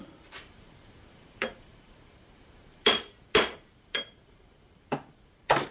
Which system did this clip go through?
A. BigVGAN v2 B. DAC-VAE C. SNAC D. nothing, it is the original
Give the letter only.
A